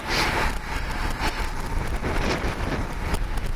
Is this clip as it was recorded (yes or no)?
yes